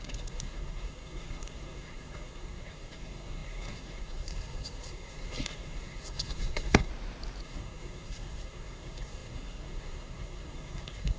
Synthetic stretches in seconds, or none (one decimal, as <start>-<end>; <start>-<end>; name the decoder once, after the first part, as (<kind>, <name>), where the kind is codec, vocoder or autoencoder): 0.0-6.9 (codec, SNAC); 7.4-11.2